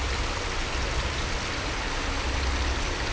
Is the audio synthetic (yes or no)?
no